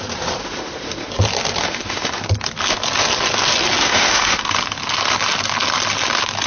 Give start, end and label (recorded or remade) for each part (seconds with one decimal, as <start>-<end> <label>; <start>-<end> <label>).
0.0-0.4 recorded; 0.4-1.1 remade; 1.1-1.6 recorded; 1.6-2.2 remade; 2.2-3.8 recorded; 3.8-4.5 remade; 4.5-6.5 recorded